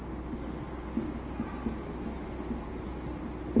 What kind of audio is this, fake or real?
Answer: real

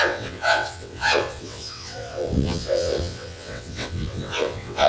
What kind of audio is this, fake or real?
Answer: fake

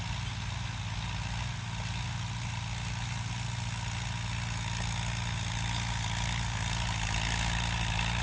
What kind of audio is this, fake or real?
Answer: real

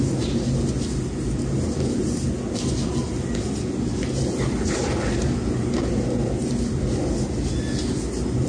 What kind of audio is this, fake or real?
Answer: real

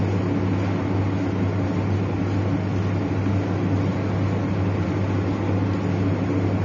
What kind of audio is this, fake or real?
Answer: real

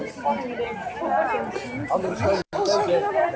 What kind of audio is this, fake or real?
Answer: real